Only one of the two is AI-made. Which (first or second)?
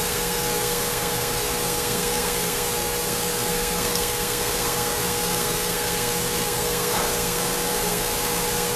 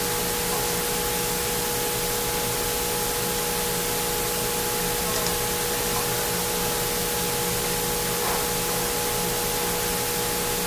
first